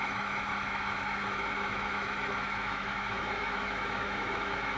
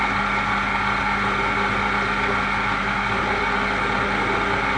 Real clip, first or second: second